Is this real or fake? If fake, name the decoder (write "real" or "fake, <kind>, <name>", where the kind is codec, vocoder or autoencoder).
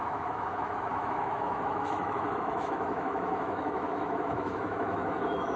fake, autoencoder, DAC-VAE